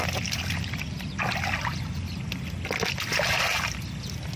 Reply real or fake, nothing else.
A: real